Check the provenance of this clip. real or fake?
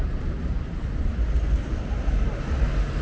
real